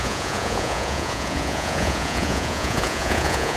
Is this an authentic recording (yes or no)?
no